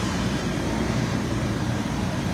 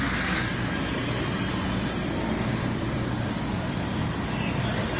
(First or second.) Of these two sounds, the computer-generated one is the first